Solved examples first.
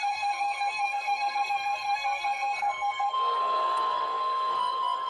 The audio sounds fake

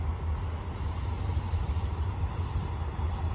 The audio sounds real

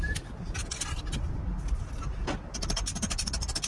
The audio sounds real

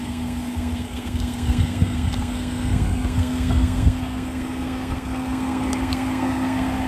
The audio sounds fake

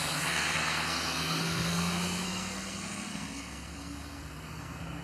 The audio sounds fake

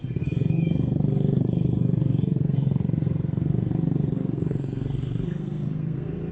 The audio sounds fake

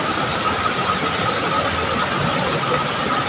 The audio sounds real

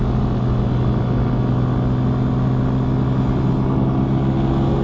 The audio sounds real